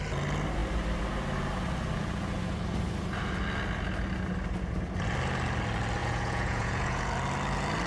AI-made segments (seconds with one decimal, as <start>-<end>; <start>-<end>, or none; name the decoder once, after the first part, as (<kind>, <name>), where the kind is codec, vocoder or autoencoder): 6.0-7.1 (vocoder, Vocos)